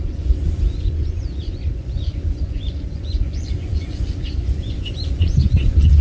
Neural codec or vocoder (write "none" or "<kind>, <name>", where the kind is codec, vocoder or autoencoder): vocoder, Vocos